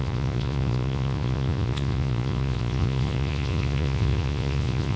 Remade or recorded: remade